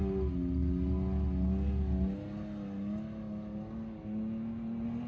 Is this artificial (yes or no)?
no